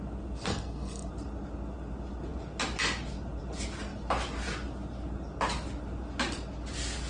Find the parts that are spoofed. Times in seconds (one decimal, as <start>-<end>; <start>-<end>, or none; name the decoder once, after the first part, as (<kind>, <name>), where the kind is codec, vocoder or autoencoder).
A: 0.5-1.1 (codec, SNAC)

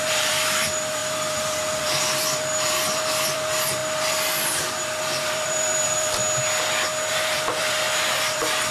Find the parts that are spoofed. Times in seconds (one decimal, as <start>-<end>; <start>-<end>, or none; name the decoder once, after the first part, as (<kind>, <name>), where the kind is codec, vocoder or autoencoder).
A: 0.0-6.2 (vocoder, BigVGAN v2); 7.1-8.7

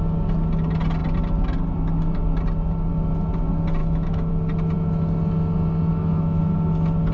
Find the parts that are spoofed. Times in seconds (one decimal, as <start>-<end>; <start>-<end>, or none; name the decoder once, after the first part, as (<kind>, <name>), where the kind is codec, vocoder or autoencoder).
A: 3.8-4.3 (autoencoder, DAC-VAE); 5.9-6.4

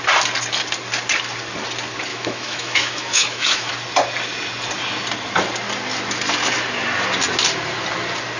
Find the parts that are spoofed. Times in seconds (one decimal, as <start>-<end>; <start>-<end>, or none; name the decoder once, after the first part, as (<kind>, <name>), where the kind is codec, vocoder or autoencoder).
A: 2.1-3.7 (autoencoder, DAC-VAE)

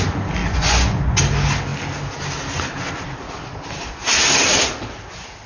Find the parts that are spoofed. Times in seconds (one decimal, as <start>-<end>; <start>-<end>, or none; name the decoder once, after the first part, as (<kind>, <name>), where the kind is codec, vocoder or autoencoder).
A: 0.4-1.2 (vocoder, Vocos)

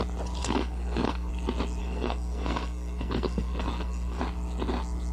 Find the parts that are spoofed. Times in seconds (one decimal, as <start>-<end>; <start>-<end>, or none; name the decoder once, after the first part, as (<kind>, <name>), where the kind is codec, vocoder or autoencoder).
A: 0.4-1.3 (codec, SNAC); 1.8-4.2